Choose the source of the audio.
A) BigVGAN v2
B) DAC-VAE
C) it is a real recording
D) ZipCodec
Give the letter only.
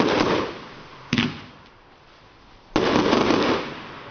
C